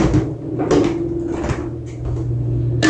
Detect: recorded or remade recorded